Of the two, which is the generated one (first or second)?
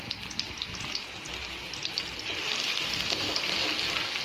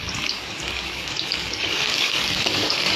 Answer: second